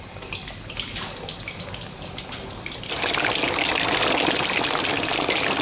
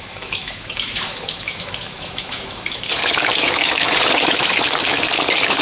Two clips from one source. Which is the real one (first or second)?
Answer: first